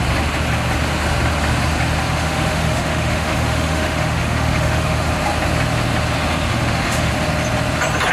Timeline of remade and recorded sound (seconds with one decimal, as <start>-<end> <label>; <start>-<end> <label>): 0.0-2.1 recorded; 2.1-5.1 remade; 5.1-6.5 recorded; 6.5-7.1 remade; 7.1-8.1 recorded